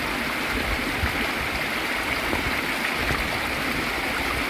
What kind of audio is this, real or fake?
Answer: real